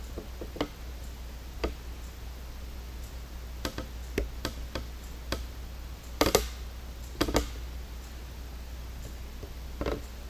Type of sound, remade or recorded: recorded